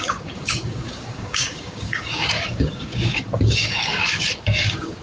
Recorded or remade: remade